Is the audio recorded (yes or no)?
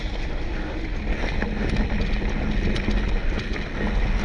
yes